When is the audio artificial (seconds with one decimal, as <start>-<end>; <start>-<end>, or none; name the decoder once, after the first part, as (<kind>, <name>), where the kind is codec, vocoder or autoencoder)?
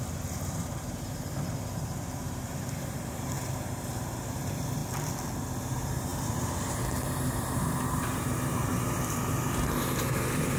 0.0-4.8 (vocoder, BigVGAN v2); 5.6-10.6